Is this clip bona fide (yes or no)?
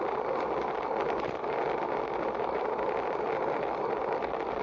yes